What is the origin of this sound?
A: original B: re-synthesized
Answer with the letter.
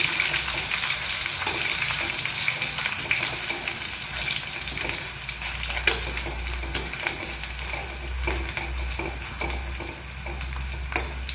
A